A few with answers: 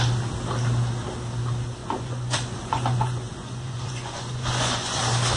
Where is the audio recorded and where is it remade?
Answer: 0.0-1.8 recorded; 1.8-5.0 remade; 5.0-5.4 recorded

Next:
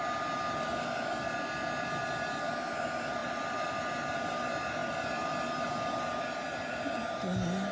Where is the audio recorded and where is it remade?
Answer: 0.0-3.2 recorded; 3.2-3.8 remade; 3.8-4.8 recorded; 4.8-6.2 remade; 6.2-7.7 recorded

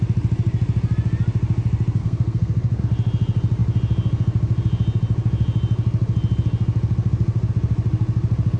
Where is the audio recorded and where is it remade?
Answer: 0.0-2.0 recorded; 2.0-2.8 remade; 2.8-8.6 recorded

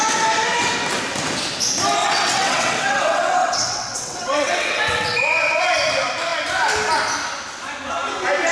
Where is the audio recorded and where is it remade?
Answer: 0.0-2.0 recorded; 2.0-5.6 remade; 5.6-8.5 recorded

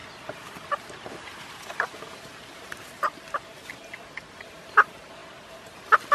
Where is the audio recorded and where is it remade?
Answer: 0.0-6.1 recorded